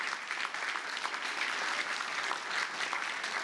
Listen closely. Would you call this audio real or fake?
real